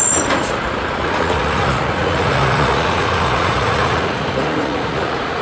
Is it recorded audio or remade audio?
remade